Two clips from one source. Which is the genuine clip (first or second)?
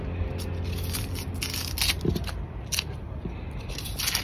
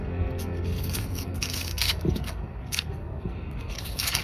first